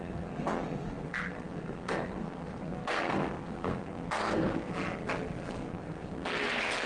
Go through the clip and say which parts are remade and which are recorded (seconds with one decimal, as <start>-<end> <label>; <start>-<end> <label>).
0.0-4.7 remade; 4.7-5.5 recorded; 5.5-6.9 remade

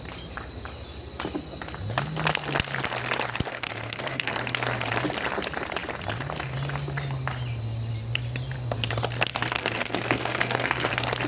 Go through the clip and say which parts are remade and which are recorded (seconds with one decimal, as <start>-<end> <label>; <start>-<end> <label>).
0.0-3.5 recorded; 3.5-4.3 remade; 4.3-9.3 recorded; 9.3-10.9 remade; 10.9-11.3 recorded

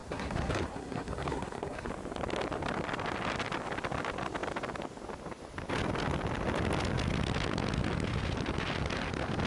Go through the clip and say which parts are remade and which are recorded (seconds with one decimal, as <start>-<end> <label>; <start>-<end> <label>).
0.0-1.9 remade; 1.9-9.5 recorded

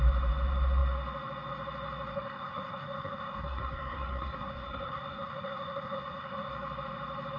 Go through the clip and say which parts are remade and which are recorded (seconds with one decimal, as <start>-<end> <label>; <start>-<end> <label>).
0.0-2.1 recorded; 2.1-6.5 remade; 6.5-7.4 recorded